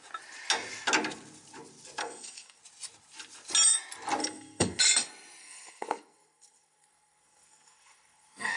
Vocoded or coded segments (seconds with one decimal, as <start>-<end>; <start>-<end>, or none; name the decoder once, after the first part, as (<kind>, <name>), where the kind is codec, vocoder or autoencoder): 2.0-2.6 (codec, SNAC); 4.2-4.8; 5.4-8.6